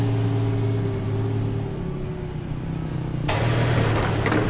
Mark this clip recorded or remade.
recorded